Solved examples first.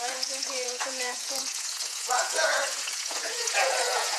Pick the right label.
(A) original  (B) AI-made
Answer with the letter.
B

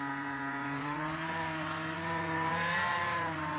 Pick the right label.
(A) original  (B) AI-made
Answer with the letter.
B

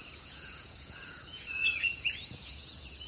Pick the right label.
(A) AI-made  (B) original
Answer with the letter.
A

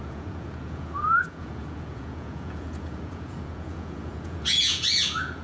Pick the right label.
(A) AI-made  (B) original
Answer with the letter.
A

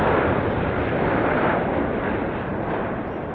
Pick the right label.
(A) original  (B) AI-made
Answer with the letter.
A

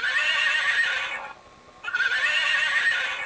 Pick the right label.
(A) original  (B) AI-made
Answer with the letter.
A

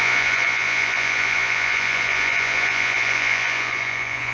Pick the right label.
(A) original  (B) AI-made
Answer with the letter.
B